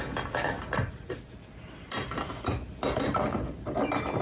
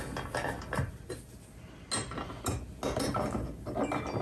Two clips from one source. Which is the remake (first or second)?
first